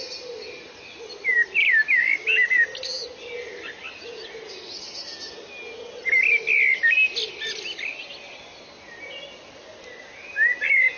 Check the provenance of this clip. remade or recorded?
recorded